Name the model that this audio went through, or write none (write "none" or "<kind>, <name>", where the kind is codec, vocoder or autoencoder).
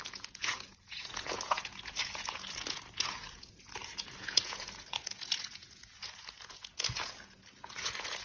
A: vocoder, Vocos